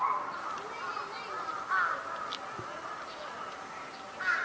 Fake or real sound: real